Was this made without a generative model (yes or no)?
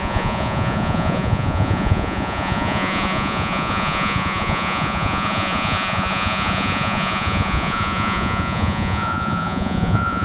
no